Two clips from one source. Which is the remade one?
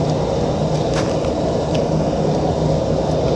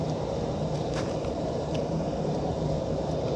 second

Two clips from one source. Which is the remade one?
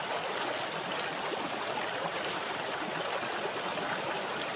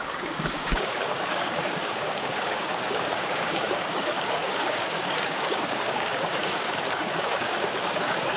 second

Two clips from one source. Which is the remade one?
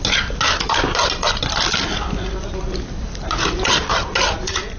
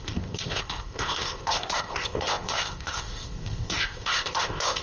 second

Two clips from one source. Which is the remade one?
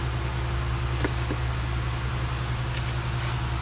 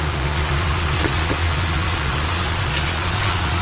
second